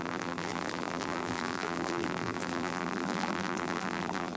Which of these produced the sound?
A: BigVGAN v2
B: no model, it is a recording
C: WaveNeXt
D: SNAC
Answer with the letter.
A